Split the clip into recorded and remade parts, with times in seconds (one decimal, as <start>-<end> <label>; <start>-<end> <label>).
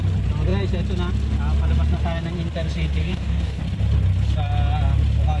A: 0.0-3.0 recorded; 3.0-3.6 remade; 3.6-5.4 recorded